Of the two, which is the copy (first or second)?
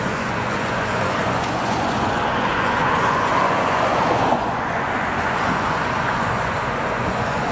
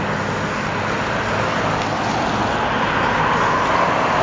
first